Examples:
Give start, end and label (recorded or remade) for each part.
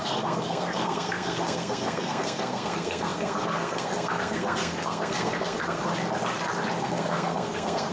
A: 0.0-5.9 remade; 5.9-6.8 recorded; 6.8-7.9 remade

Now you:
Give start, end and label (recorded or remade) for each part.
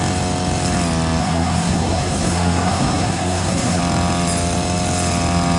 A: 0.0-1.2 recorded; 1.2-3.8 remade; 3.8-5.6 recorded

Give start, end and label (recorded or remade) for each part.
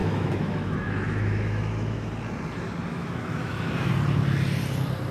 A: 0.0-2.1 remade; 2.1-2.9 recorded; 2.9-3.9 remade; 3.9-5.1 recorded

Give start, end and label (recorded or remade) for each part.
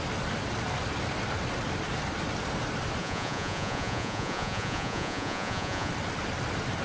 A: 0.0-3.0 recorded; 3.0-5.9 remade; 5.9-6.8 recorded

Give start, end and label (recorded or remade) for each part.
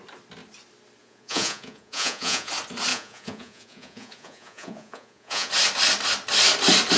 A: 0.0-1.0 recorded; 1.0-2.5 remade; 2.5-2.9 recorded; 2.9-5.5 remade; 5.5-7.0 recorded